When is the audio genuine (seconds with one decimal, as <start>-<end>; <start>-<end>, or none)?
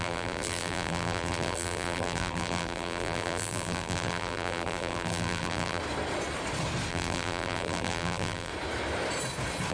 5.8-6.9; 8.5-9.7